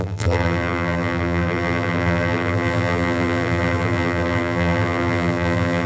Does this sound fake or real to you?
fake